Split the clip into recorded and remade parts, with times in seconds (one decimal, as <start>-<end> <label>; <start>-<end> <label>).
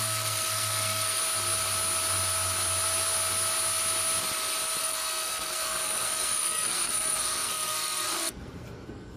0.0-1.2 remade; 1.2-4.8 recorded; 4.8-9.2 remade